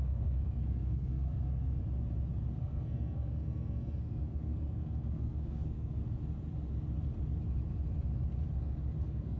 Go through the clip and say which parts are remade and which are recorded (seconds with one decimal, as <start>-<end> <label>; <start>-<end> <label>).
0.0-1.8 remade; 1.8-2.6 recorded; 2.6-6.0 remade; 6.0-9.0 recorded; 9.0-9.4 remade